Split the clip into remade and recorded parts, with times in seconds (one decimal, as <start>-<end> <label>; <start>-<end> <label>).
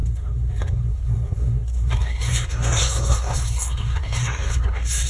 0.0-5.1 remade